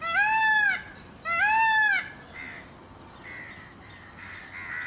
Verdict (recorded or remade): recorded